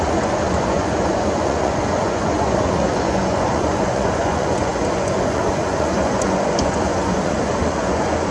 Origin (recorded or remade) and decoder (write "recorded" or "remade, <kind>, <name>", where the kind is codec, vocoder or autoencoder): remade, vocoder, Vocos